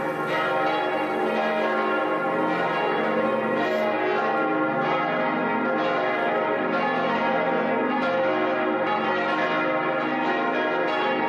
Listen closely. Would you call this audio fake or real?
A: real